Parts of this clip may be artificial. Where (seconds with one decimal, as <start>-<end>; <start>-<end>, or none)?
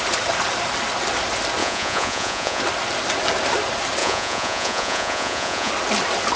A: 1.6-2.6; 4.0-5.7